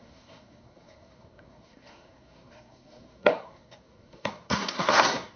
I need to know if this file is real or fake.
fake